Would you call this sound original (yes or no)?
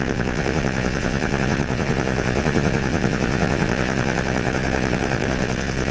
no